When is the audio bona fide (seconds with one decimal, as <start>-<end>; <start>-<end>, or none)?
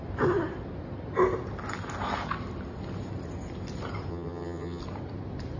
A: 0.0-4.1; 4.8-5.6